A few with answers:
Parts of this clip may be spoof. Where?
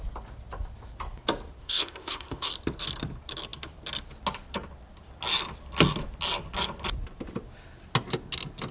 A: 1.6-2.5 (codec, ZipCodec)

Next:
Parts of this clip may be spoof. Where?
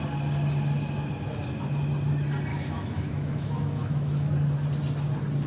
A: 2.5-4.3 (autoencoder, DAC-VAE)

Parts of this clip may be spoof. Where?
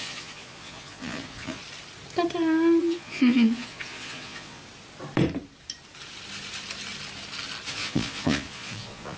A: 0.0-1.6 (vocoder, Vocos); 2.8-4.6; 7.7-9.2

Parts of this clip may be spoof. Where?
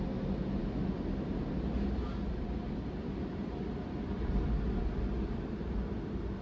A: none